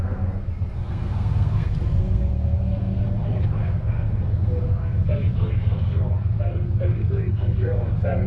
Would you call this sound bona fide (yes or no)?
no